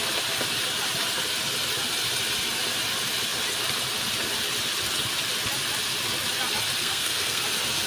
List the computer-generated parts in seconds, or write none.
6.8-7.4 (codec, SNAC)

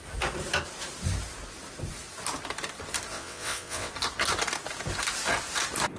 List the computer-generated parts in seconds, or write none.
3.1-3.9 (vocoder, WaveNeXt)

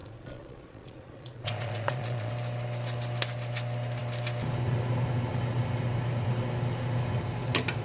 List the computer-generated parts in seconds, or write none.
0.0-2.3 (vocoder, Vocos)

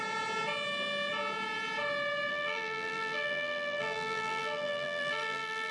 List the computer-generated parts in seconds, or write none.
2.3-5.7 (vocoder, BigVGAN v2)

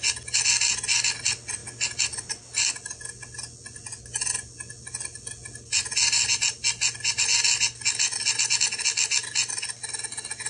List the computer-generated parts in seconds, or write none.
none

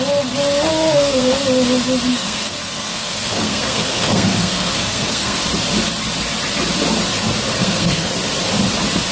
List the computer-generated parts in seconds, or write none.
0.7-1.3 (codec, SNAC); 2.1-5.4; 7.6-8.1

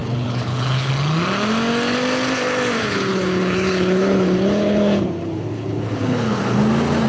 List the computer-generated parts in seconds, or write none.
0.0-0.9 (codec, HILCodec); 2.8-6.6

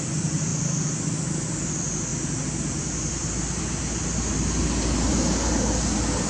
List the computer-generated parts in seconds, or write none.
none